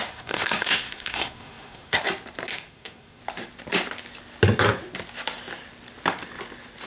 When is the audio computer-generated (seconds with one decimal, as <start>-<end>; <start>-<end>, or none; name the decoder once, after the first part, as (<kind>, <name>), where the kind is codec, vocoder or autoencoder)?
0.0-2.0 (codec, SNAC); 2.5-3.2